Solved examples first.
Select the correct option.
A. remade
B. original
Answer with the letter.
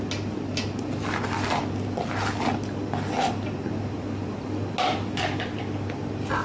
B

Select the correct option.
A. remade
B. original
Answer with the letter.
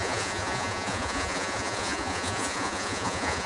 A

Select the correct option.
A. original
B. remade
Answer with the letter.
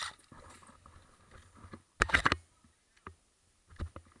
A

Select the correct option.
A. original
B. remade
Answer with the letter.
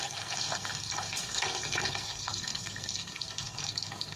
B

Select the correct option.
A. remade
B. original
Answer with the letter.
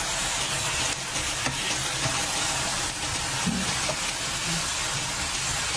B